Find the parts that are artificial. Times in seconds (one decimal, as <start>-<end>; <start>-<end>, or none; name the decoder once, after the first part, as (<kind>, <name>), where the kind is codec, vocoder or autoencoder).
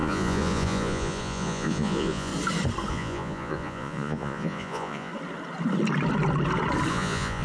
0.0-2.3 (vocoder, Vocos); 2.9-5.1; 6.9-7.4